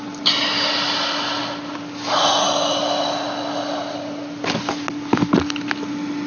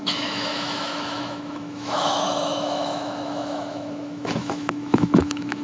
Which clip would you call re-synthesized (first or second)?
second